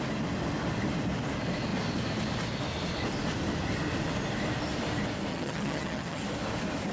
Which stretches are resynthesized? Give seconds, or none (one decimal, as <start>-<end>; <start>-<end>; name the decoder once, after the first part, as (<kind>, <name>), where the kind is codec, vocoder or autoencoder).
5.3-6.2 (vocoder, HiFi-GAN)